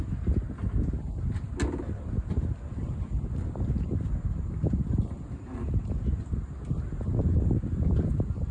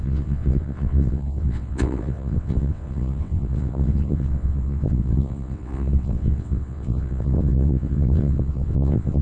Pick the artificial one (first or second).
second